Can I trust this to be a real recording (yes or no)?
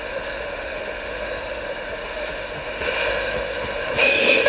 no